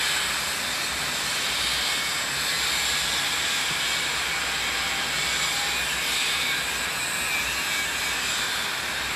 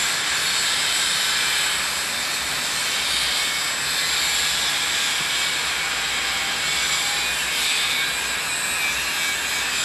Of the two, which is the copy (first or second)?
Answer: first